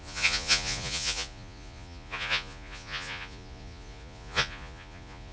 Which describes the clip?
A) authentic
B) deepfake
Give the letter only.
B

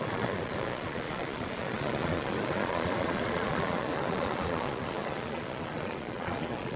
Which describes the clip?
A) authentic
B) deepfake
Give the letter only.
B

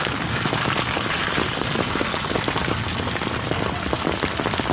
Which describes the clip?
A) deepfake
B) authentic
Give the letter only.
B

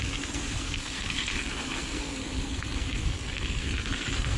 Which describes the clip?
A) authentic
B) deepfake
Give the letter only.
B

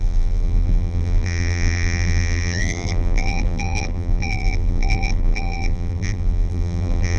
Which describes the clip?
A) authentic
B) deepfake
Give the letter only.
B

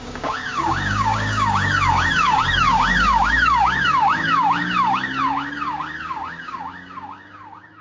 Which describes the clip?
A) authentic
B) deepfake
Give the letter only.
B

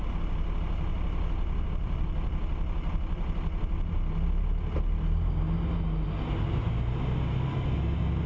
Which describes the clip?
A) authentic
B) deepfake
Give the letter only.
A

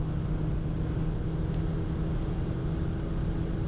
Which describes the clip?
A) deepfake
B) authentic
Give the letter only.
B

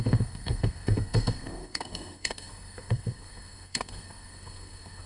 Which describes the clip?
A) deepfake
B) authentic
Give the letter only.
A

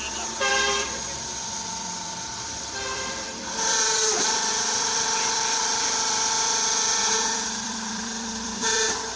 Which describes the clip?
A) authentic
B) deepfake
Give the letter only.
B